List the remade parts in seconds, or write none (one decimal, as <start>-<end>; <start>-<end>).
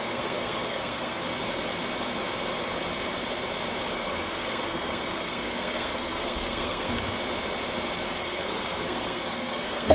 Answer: 0.0-1.3; 3.9-6.9; 8.2-9.9